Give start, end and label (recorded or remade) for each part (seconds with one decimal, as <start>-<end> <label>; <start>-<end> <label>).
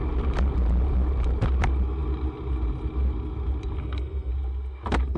0.0-3.8 recorded; 3.8-4.3 remade; 4.3-5.2 recorded